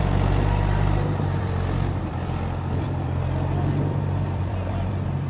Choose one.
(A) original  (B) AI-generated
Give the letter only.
B